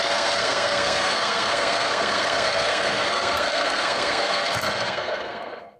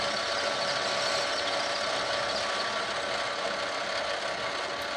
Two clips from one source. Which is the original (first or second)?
second